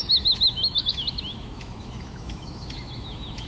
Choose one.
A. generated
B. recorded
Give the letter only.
A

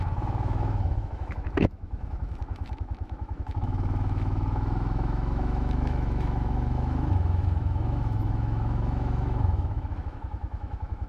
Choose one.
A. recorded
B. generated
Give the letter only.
B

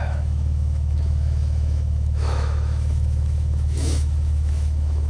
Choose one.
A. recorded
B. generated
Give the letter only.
B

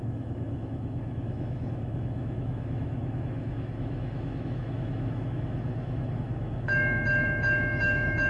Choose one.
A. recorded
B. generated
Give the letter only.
B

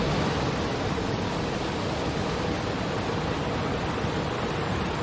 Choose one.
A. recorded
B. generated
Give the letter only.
A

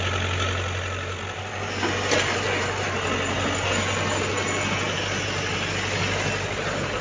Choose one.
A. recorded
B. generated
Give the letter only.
A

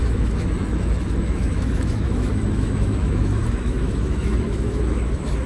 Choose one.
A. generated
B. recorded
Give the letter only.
A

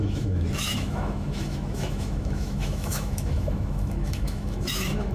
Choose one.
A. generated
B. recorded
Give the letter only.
A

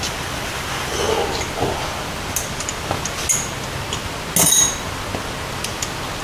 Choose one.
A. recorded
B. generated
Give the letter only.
A